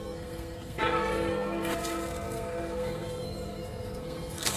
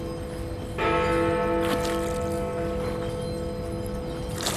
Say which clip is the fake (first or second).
first